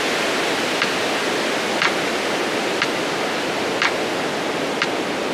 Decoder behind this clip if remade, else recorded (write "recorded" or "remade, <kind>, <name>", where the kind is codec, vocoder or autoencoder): recorded